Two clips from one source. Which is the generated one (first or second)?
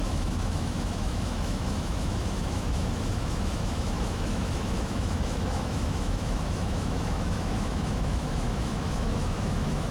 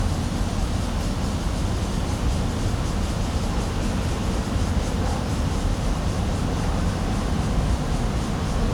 first